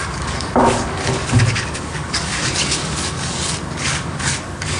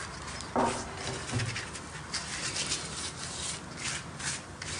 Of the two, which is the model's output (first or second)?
first